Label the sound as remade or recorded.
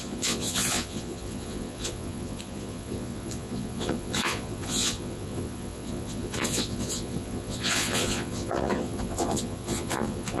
remade